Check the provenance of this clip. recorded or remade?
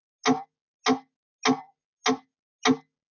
recorded